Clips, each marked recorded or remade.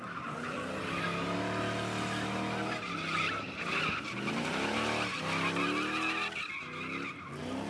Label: recorded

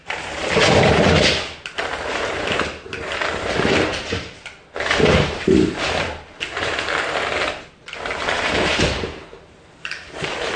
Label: recorded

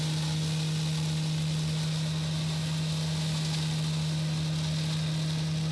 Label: recorded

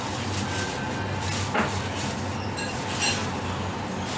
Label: recorded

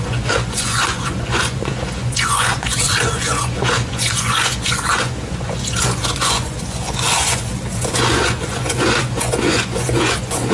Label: remade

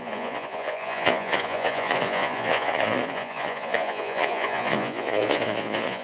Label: remade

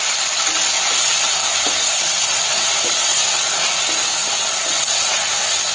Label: recorded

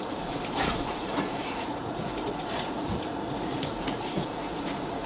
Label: remade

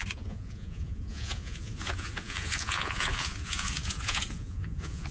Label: remade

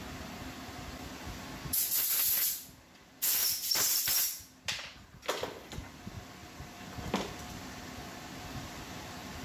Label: recorded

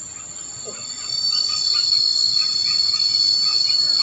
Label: recorded